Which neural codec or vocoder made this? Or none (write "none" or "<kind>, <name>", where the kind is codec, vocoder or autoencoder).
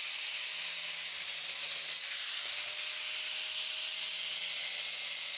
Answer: none